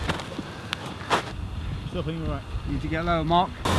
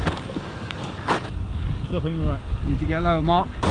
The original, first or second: first